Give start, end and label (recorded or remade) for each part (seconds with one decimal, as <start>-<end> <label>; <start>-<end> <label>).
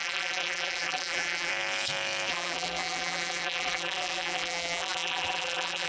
0.0-1.5 remade; 1.5-2.3 recorded; 2.3-5.9 remade